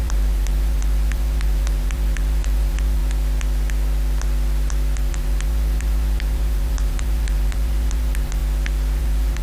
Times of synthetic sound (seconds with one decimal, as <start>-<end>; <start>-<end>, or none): 0.0-3.0; 5.1-8.4; 9.0-9.4